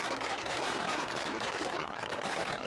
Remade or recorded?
remade